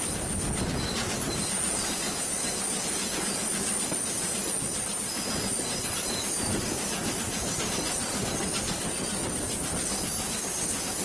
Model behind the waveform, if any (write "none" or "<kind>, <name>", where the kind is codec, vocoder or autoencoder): none